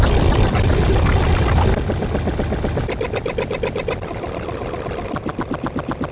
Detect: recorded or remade recorded